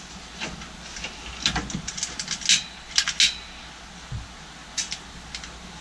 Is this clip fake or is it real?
real